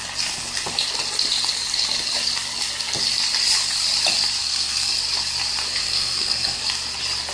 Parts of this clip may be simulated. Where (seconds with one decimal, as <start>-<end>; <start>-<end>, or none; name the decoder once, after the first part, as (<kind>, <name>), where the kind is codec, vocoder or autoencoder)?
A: 4.4-4.9 (codec, SNAC); 5.8-6.6